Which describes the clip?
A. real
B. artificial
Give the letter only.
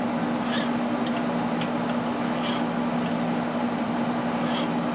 A